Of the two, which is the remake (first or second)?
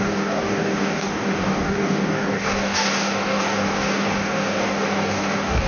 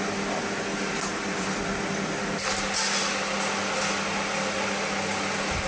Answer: first